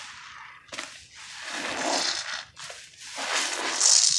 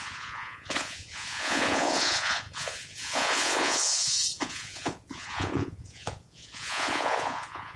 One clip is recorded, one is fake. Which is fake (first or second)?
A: second